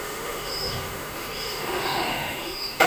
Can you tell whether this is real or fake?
fake